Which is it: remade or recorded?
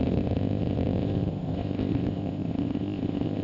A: remade